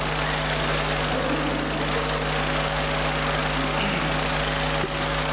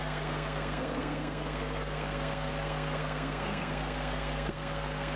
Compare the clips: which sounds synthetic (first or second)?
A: second